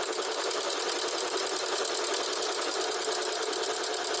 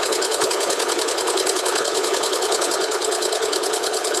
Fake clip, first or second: second